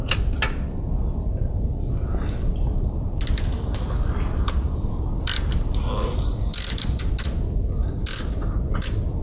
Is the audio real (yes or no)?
yes